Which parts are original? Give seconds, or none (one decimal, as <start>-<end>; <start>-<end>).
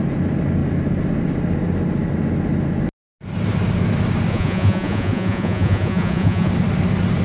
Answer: 0.0-4.3; 6.5-7.2